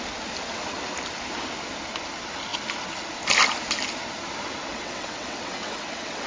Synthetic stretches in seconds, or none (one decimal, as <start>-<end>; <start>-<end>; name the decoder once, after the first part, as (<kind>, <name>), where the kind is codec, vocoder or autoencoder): 4.7-6.3 (vocoder, WaveNeXt)